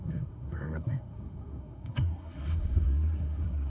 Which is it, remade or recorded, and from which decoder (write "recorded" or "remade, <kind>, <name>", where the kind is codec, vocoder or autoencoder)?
remade, codec, SNAC